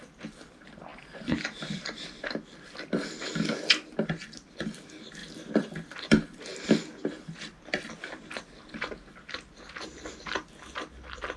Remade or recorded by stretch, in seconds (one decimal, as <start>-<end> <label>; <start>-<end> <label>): 0.0-0.9 recorded; 0.9-2.2 remade; 2.2-5.2 recorded; 5.2-5.7 remade; 5.7-11.4 recorded